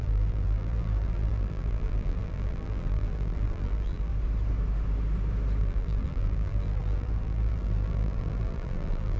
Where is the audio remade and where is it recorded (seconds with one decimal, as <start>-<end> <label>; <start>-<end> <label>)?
0.0-4.1 remade; 4.1-5.6 recorded; 5.6-9.2 remade